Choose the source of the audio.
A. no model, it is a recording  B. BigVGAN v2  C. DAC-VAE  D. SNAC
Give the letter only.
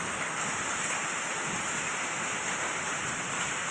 A